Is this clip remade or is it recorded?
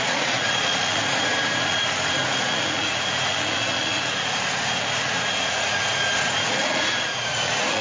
remade